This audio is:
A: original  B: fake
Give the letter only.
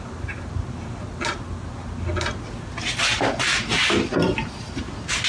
A